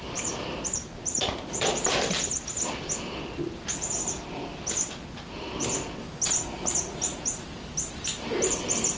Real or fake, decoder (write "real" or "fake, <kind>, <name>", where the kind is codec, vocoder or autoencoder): real